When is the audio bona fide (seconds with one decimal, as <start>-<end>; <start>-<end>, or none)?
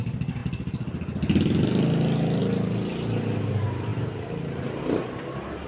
0.0-5.7